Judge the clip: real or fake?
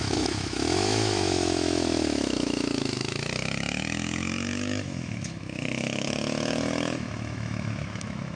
fake